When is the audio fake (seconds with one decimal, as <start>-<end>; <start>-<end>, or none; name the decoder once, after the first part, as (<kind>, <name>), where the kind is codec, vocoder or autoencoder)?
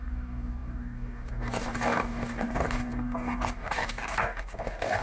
0.0-5.0 (codec, DAC)